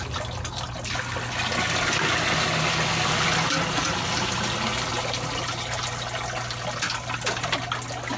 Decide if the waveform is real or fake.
real